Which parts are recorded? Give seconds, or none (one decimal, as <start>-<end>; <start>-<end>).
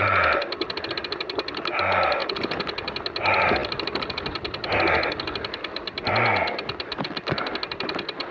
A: 0.0-8.3